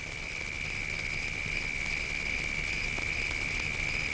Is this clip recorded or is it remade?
recorded